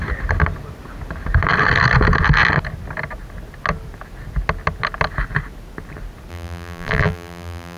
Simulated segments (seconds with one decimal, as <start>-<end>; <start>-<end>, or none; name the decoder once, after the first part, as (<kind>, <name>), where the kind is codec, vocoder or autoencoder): 6.3-7.8 (vocoder, BigVGAN v2)